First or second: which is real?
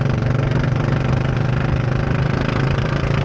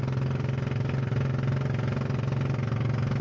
second